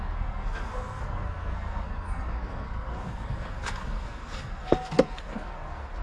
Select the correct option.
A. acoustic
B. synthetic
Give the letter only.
B